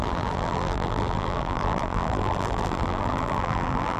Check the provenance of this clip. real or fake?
fake